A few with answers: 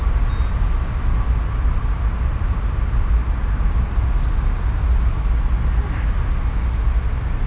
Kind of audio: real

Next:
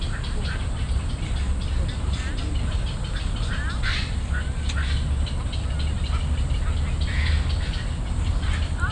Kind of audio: real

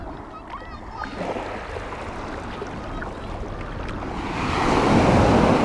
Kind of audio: real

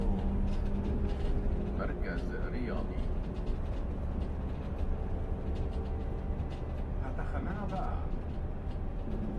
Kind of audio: real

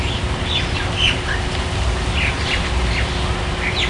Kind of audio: real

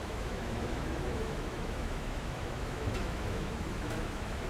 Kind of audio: fake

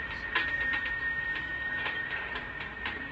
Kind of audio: real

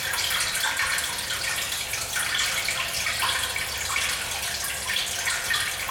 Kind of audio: real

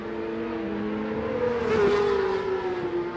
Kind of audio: real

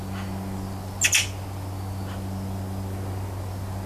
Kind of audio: real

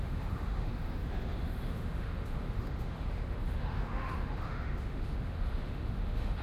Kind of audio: fake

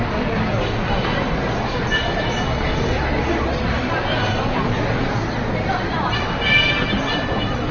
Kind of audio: real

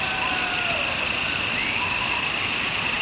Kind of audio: real